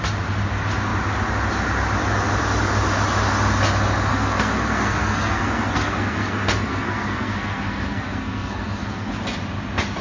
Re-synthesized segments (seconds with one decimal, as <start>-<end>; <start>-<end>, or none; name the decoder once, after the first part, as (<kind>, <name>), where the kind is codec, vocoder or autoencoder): 4.1-9.1 (codec, SNAC)